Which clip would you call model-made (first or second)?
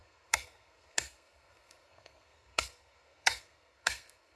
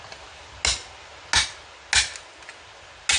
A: first